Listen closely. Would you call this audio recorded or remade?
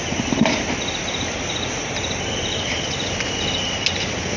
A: recorded